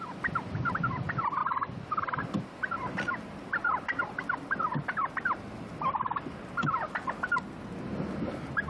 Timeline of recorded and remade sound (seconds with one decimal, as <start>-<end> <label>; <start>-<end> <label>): 0.0-8.7 recorded